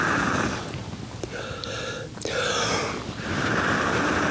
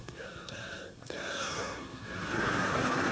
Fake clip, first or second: second